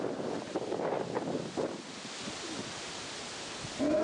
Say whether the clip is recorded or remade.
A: recorded